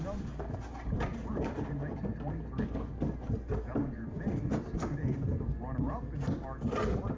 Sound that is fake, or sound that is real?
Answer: real